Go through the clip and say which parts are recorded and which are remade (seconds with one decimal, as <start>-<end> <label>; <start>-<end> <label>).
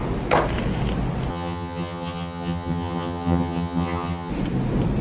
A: 0.0-1.3 recorded; 1.3-4.3 remade; 4.3-5.0 recorded